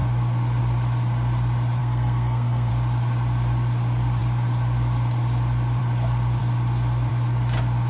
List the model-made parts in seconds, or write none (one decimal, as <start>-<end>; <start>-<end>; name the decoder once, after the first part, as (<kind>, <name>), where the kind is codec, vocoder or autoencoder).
1.8-2.7 (codec, SNAC)